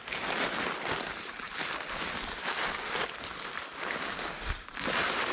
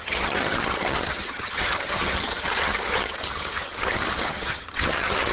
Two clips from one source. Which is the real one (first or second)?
first